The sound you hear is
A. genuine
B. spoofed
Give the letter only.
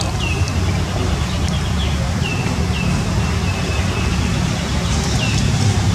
A